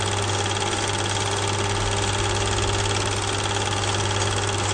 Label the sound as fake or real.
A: real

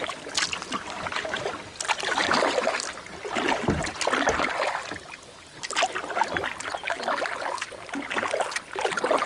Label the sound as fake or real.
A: real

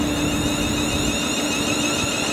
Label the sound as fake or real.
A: real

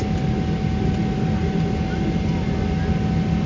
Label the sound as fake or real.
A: real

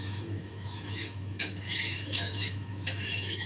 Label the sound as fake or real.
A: fake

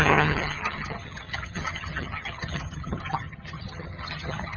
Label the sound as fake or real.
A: fake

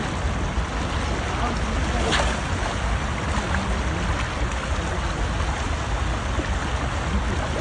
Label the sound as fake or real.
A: real